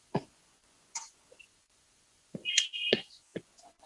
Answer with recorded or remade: remade